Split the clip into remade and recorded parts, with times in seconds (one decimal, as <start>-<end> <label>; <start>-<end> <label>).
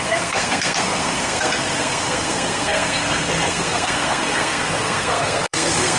0.0-6.0 remade